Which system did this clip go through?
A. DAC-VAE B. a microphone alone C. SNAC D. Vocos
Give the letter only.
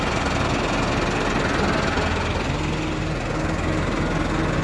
B